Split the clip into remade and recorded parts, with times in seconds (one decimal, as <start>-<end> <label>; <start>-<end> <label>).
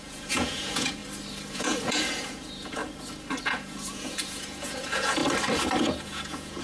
0.0-1.0 remade; 1.0-1.5 recorded; 1.5-2.8 remade; 2.8-3.4 recorded; 3.4-5.2 remade; 5.2-5.8 recorded; 5.8-6.6 remade